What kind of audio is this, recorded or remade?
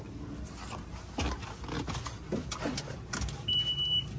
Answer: recorded